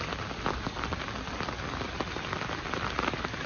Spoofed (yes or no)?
no